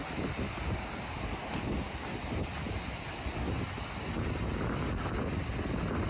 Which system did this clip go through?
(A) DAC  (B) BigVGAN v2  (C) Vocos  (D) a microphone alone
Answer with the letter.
D